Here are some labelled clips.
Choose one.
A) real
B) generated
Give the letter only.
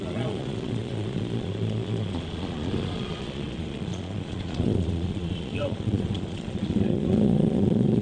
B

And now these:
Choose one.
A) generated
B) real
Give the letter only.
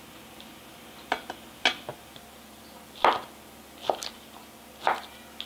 B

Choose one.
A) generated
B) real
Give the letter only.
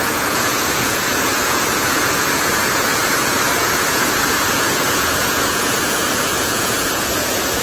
A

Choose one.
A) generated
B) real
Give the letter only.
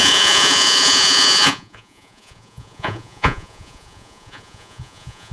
A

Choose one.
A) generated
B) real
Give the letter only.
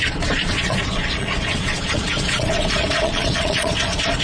A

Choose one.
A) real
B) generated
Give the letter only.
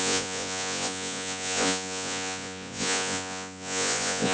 B